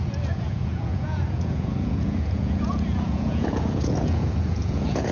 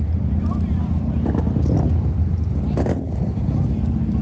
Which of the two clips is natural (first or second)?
second